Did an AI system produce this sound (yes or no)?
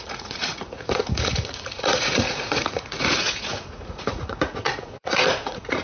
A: yes